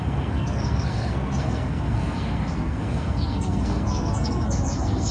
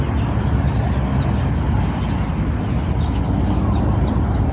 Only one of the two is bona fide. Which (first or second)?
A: second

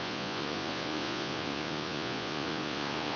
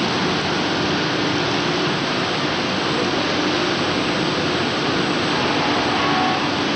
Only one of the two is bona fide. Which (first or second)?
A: second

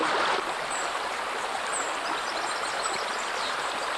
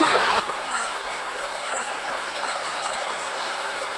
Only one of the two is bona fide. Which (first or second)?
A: first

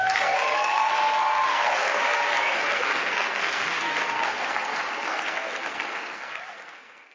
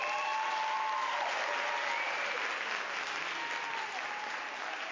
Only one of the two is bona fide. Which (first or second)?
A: second